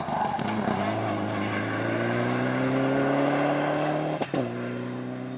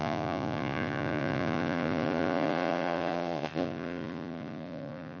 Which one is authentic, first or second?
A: first